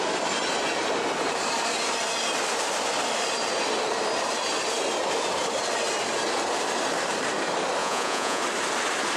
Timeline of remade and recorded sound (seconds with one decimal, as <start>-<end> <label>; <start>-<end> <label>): 0.0-7.8 recorded; 7.8-8.4 remade; 8.4-9.2 recorded